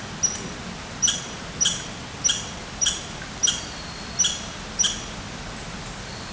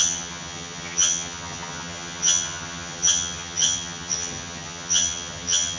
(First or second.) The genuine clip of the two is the first